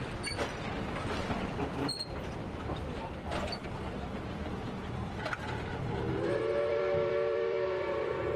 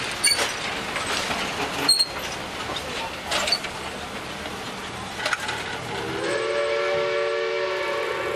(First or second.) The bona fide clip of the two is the second